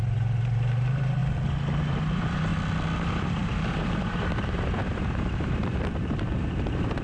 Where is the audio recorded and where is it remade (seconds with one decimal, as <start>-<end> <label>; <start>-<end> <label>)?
0.0-1.2 remade; 1.2-1.8 recorded; 1.8-2.5 remade; 2.5-3.0 recorded; 3.0-7.0 remade